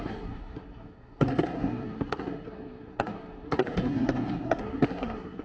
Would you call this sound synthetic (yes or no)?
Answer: yes